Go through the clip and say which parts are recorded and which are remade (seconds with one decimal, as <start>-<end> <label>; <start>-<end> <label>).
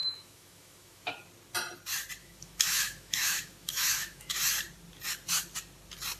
0.0-1.1 remade; 1.1-2.2 recorded; 2.2-4.4 remade; 4.4-6.2 recorded